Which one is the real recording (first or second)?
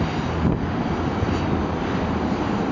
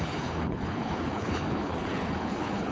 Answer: first